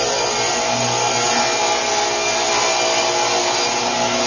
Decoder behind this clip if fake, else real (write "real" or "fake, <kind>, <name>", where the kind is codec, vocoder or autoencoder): real